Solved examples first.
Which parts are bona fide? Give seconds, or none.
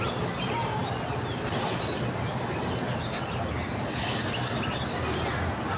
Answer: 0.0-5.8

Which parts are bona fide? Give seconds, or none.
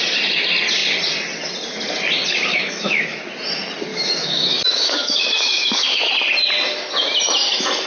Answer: 0.0-2.5; 3.2-3.9; 6.1-7.9